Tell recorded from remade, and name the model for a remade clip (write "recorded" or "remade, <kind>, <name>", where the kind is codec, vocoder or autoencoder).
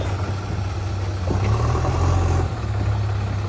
recorded